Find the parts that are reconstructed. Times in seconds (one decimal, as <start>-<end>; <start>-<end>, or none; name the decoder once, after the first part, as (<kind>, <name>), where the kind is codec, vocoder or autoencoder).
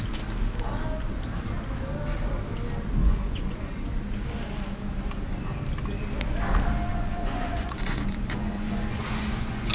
3.0-3.8 (vocoder, Vocos); 6.9-9.7